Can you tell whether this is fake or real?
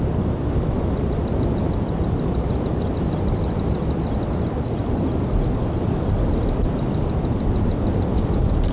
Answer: real